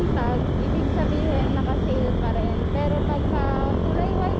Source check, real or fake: real